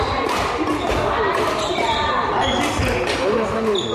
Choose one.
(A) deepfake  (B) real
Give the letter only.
B